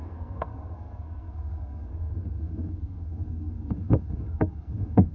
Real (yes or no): no